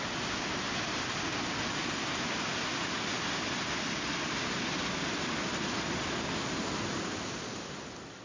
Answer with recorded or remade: recorded